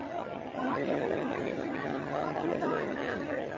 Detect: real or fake fake